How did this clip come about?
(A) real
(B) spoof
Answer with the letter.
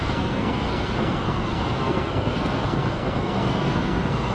B